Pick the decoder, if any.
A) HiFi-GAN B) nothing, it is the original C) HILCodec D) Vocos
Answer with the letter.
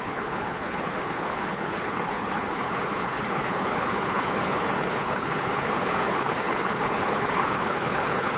C